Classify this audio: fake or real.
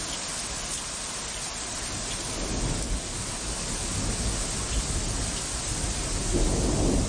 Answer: real